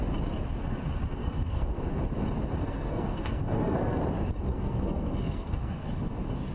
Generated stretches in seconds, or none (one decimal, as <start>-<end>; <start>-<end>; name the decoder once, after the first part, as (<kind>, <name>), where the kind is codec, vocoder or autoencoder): 1.2-1.8 (codec, SNAC); 2.6-4.0; 4.5-5.9